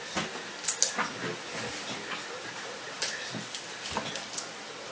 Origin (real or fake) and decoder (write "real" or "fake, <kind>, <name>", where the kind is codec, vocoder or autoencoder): real